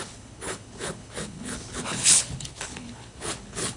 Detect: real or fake fake